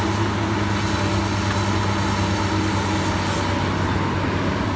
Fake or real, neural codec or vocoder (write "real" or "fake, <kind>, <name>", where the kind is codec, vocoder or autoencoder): real